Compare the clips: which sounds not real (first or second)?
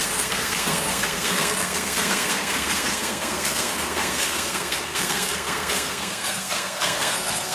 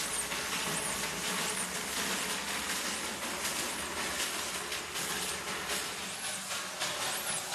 first